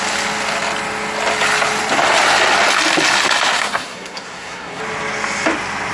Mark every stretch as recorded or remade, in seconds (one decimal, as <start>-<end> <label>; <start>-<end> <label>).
0.0-3.5 recorded; 3.5-4.8 remade; 4.8-5.9 recorded